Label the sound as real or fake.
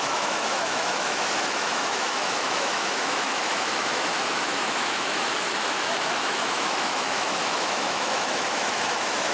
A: fake